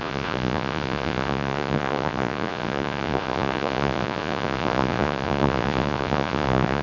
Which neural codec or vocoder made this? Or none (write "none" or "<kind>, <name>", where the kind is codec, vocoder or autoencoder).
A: vocoder, Vocos